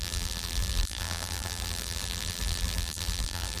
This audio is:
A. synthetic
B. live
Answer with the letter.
A